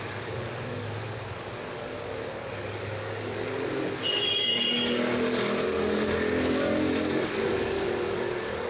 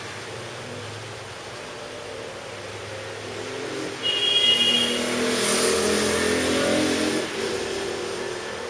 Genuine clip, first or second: second